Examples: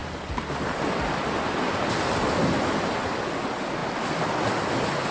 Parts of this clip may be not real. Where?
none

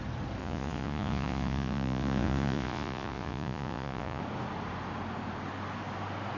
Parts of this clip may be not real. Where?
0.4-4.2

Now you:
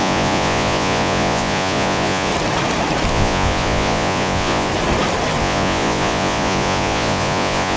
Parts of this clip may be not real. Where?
0.0-2.3; 3.1-4.7; 5.4-7.8